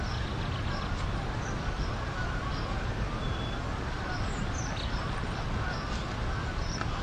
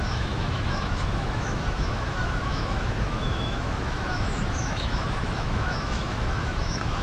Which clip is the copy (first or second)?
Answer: second